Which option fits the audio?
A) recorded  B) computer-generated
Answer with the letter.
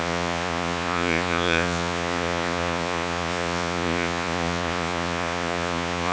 B